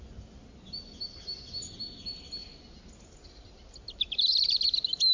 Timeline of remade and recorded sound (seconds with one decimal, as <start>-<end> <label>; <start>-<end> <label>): 0.0-5.1 recorded